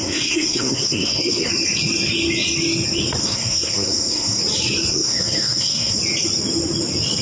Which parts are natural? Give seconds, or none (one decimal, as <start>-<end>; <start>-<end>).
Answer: 1.5-3.2; 4.4-4.9; 6.0-7.2